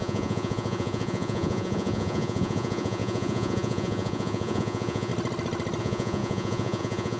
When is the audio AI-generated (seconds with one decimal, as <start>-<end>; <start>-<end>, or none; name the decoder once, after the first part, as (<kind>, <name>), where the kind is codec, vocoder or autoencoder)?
0.0-5.1 (vocoder, Vocos); 5.8-7.2